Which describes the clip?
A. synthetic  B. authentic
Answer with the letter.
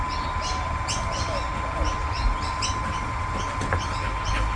B